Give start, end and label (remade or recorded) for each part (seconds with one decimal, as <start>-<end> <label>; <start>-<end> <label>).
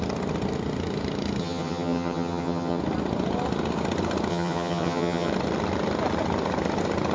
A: 0.0-1.4 recorded; 1.4-2.8 remade; 2.8-4.3 recorded; 4.3-5.3 remade; 5.3-7.1 recorded